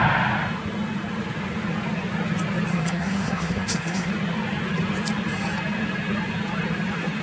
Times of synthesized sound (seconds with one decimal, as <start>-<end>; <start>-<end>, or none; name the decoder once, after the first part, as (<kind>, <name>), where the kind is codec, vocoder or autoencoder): 2.7-4.1 (codec, SNAC)